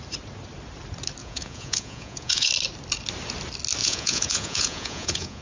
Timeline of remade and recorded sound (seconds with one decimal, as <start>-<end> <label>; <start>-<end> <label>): 0.0-1.2 recorded; 1.2-2.5 remade; 2.5-3.8 recorded; 3.8-5.4 remade